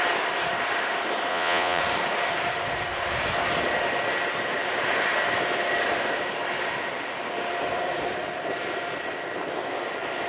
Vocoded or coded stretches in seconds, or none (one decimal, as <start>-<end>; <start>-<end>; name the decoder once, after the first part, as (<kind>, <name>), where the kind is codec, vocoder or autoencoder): 1.3-1.8 (vocoder, Vocos)